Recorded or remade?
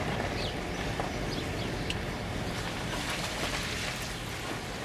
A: recorded